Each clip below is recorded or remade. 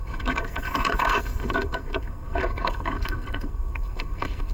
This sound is remade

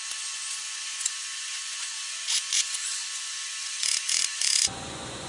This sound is remade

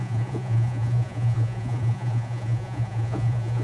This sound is remade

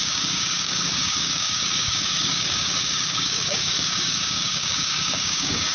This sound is remade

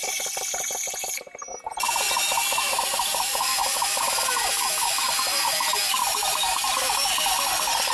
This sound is remade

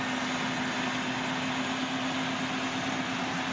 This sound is recorded